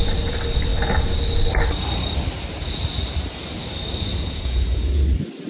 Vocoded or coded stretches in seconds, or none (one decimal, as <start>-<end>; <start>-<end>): 4.1-5.0